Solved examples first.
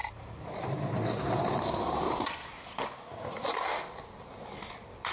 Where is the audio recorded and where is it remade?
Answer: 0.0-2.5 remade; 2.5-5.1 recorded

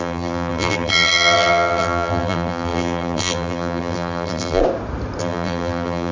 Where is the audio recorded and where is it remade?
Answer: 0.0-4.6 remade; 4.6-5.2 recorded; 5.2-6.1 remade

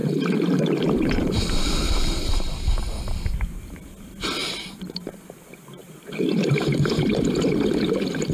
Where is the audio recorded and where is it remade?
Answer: 0.0-3.0 remade; 3.0-4.4 recorded; 4.4-5.1 remade; 5.1-5.8 recorded; 5.8-7.5 remade; 7.5-8.3 recorded

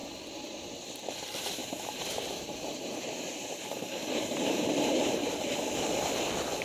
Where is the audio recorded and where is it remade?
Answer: 0.0-1.6 recorded; 1.6-5.2 remade; 5.2-6.6 recorded

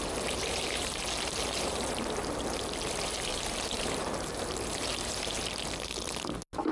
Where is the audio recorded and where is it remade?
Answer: 0.0-2.4 remade; 2.4-3.3 recorded; 3.3-5.3 remade; 5.3-6.7 recorded

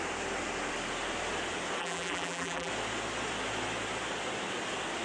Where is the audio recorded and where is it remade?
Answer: 0.0-1.8 recorded; 1.8-2.7 remade; 2.7-5.0 recorded

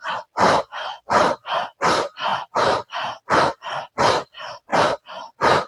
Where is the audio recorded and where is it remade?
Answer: 0.0-4.7 remade; 4.7-5.3 recorded; 5.3-5.7 remade